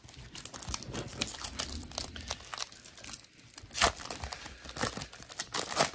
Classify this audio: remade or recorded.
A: recorded